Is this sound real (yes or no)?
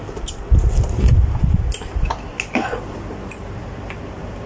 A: yes